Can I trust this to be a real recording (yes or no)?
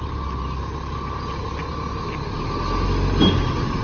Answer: yes